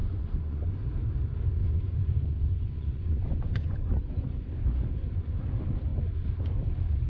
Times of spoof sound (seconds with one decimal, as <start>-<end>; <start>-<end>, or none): 0.0-0.8; 1.6-4.3